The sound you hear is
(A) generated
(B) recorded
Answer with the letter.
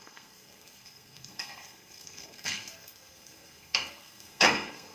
A